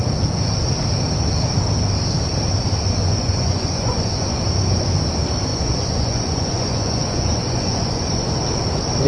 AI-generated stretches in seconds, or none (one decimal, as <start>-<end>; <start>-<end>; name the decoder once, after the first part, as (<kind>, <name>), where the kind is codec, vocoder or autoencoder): 3.0-4.4 (vocoder, Vocos); 5.5-8.3